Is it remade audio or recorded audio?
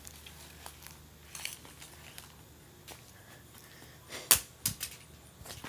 recorded